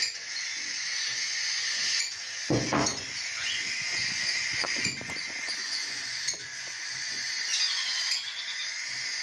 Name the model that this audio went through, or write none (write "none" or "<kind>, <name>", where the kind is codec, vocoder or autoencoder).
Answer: vocoder, Vocos